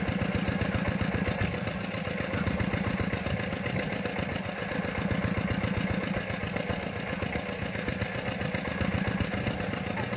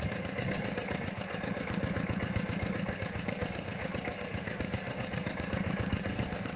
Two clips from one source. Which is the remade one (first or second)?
second